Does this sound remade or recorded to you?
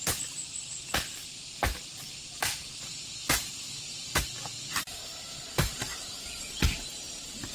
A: recorded